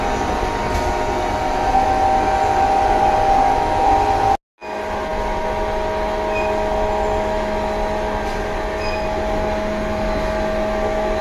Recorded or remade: recorded